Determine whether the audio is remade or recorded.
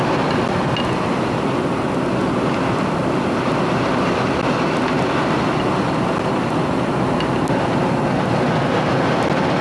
recorded